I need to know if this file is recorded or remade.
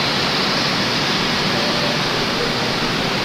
recorded